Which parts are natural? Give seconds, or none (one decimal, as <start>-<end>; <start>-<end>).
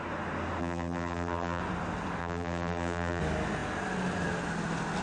0.0-0.6; 1.6-2.2; 3.2-5.0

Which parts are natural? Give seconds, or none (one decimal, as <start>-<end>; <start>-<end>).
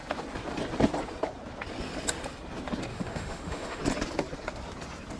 0.0-2.9; 3.8-5.2